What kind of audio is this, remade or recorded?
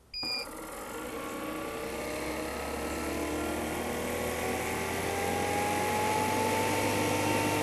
recorded